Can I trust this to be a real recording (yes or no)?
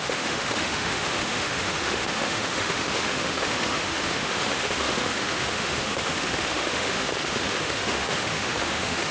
no